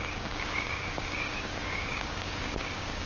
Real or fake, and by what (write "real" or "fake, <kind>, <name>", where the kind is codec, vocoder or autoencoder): fake, codec, DAC